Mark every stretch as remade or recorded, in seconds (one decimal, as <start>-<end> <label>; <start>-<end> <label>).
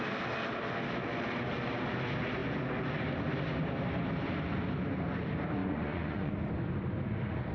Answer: 0.0-5.6 recorded; 5.6-6.3 remade; 6.3-7.5 recorded